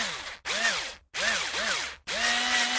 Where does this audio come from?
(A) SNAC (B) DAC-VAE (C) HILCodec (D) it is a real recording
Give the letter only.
D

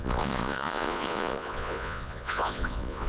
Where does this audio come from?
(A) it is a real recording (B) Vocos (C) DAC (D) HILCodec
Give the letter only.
B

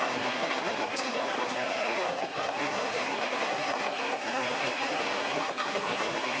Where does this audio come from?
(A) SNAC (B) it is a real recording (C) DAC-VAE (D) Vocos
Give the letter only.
A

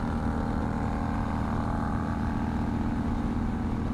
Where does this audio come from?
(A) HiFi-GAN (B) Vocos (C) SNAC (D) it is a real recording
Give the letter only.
D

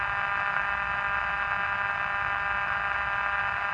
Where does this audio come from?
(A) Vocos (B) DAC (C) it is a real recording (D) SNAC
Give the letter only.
C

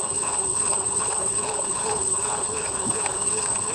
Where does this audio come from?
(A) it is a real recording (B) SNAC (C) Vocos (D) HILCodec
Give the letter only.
D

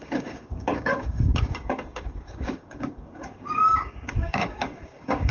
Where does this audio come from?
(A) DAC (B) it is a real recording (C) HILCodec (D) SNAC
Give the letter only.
A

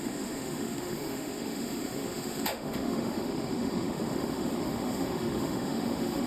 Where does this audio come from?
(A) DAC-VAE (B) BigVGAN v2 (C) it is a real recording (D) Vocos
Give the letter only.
A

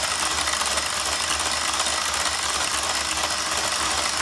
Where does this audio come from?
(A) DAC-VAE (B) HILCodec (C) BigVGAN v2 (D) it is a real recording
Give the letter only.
D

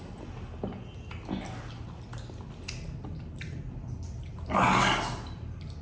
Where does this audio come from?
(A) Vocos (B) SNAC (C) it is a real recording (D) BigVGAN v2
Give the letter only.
C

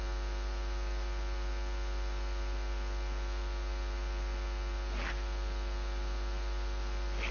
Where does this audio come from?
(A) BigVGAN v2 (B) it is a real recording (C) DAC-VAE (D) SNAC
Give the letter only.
B